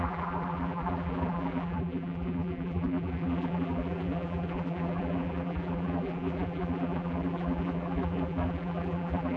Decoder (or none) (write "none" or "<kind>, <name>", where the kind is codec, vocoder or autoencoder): vocoder, BigVGAN v2